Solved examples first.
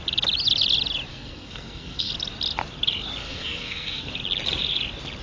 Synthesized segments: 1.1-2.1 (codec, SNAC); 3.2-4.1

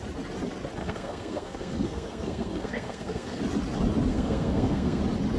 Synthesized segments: 0.8-3.4 (codec, SNAC); 4.1-5.0

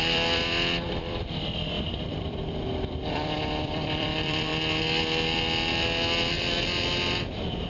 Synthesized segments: 0.0-4.5 (vocoder, BigVGAN v2)

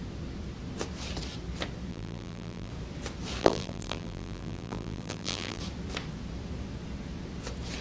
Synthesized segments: 1.9-2.7 (vocoder, BigVGAN v2); 3.4-5.6

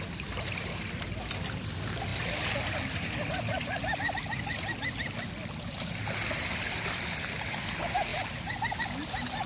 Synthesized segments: none

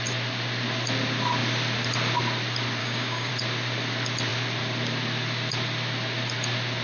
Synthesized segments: 2.8-3.3 (codec, DAC)

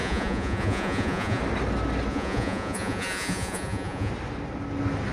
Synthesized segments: 0.0-1.4 (vocoder, Vocos); 2.1-4.1